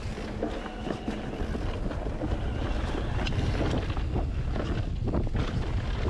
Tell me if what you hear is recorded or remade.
recorded